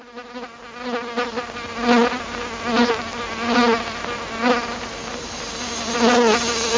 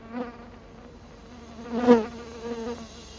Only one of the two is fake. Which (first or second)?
second